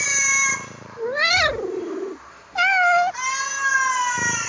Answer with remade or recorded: recorded